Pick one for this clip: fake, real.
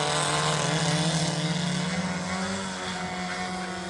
real